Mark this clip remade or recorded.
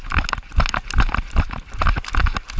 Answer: recorded